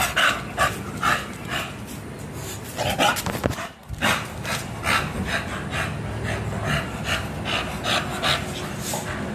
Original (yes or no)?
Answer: yes